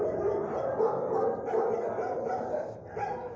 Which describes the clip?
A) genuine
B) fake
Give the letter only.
A